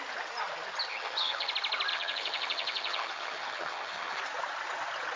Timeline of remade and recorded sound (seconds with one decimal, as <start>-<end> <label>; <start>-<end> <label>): 0.0-0.9 recorded; 0.9-1.5 remade; 1.5-1.9 recorded; 1.9-4.2 remade; 4.2-5.2 recorded